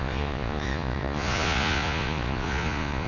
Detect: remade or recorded remade